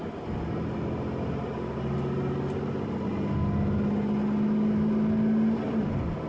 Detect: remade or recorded recorded